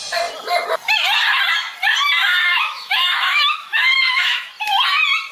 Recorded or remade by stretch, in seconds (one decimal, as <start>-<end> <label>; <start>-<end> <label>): 0.0-2.2 recorded; 2.2-4.5 remade; 4.5-5.3 recorded